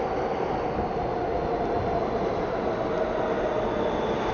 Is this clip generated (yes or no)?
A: no